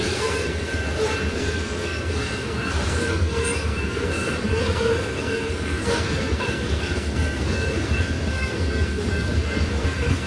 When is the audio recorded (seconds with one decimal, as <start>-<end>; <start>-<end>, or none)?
0.8-1.3